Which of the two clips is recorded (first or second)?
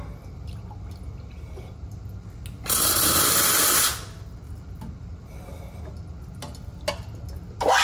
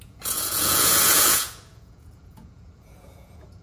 first